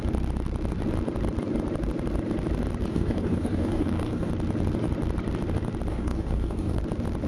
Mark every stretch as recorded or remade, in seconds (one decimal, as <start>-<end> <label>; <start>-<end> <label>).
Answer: 0.0-2.9 recorded; 2.9-4.3 remade; 4.3-5.9 recorded; 5.9-6.8 remade; 6.8-7.3 recorded